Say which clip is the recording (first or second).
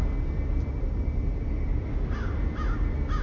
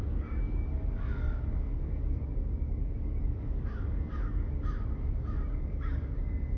first